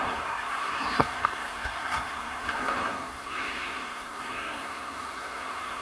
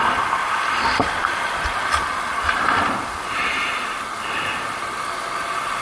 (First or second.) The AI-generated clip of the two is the first